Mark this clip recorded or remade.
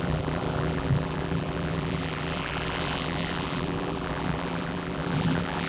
remade